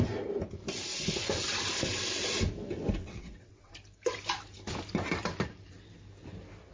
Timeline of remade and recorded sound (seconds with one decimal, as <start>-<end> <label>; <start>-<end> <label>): 0.0-3.0 recorded; 3.0-3.7 remade; 3.7-6.7 recorded